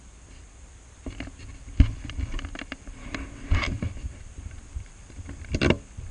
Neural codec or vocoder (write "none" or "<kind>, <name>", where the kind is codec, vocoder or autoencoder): vocoder, BigVGAN v2